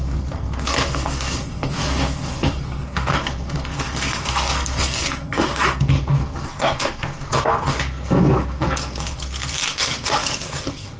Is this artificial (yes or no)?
yes